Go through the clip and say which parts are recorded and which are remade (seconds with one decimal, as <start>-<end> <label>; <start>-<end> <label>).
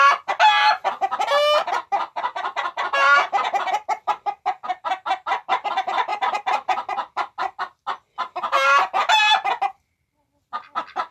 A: 0.0-11.1 recorded